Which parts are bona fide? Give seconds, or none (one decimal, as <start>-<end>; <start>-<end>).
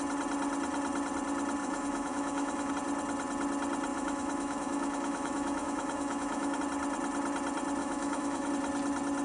0.0-1.6; 2.7-3.9; 6.6-7.8; 8.5-9.2